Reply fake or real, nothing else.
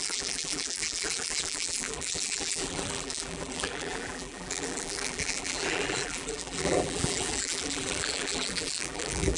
fake